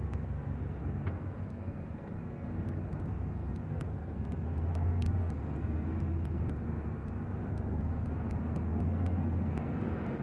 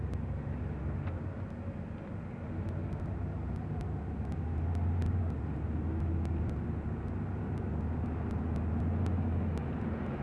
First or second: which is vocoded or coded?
first